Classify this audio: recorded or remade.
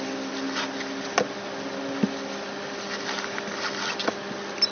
recorded